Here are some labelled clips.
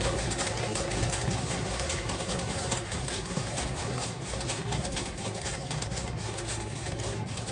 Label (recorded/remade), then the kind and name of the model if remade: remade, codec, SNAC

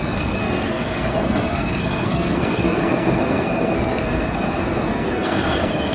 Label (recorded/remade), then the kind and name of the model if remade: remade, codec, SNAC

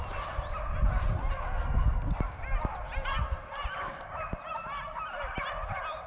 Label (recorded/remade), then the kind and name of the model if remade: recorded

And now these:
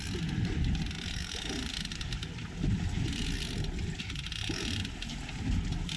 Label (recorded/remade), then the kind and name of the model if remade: recorded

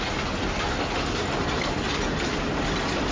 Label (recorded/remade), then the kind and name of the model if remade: recorded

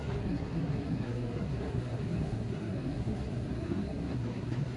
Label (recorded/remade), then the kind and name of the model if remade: remade, codec, SNAC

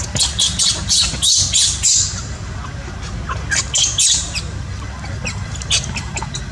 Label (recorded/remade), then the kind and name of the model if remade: recorded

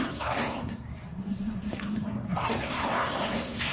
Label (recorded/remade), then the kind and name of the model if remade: remade, codec, SNAC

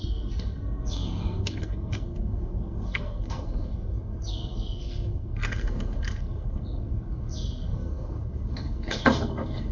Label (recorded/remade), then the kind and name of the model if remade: remade, codec, SNAC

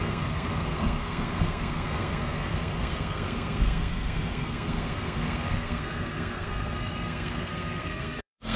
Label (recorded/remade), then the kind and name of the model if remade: remade, codec, SNAC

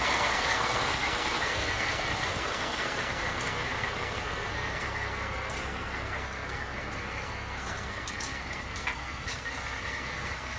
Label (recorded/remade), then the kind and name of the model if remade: remade, codec, SNAC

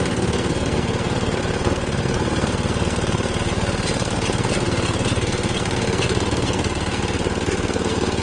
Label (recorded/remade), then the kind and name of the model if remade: remade, codec, SNAC